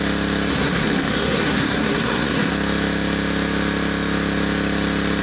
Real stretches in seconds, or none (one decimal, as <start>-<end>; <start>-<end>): 0.0-0.5; 2.5-5.2